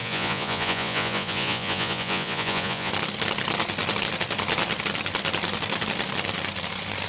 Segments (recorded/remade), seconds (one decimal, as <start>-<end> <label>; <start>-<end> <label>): 0.0-2.9 remade; 2.9-7.1 recorded